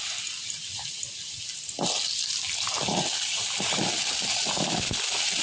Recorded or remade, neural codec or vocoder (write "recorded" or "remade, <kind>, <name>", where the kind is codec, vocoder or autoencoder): recorded